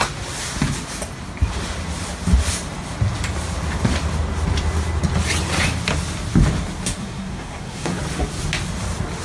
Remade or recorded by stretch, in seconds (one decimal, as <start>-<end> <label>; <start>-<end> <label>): 0.0-7.0 recorded; 7.0-8.0 remade; 8.0-9.2 recorded